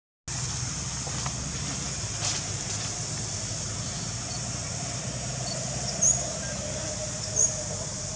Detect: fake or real real